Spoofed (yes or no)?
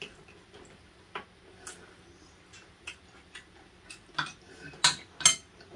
no